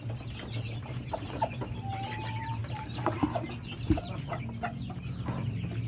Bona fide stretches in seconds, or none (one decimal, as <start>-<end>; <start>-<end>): 0.0-2.6; 4.4-5.9